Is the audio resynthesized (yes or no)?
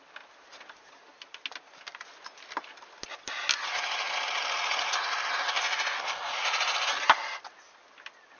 no